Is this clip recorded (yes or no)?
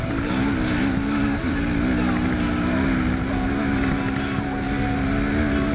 yes